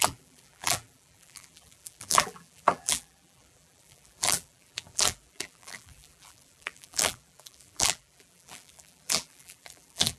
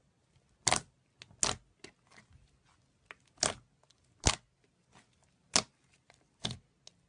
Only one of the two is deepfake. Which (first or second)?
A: first